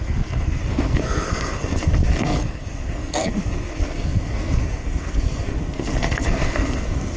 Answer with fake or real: fake